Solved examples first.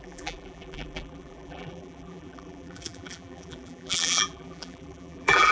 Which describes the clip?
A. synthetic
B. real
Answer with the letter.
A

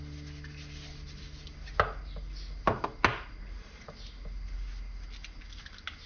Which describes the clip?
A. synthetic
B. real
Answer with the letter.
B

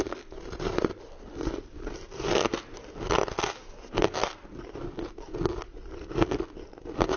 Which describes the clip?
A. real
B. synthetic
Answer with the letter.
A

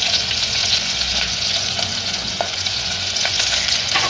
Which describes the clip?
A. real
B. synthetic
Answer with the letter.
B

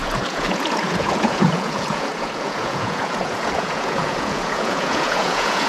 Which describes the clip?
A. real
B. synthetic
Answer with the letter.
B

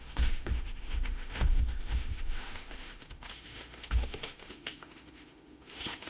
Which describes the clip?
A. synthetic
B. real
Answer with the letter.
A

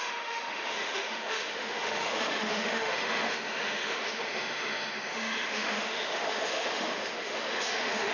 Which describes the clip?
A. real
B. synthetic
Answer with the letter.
B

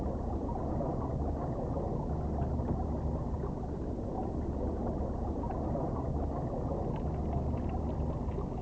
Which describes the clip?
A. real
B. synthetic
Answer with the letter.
A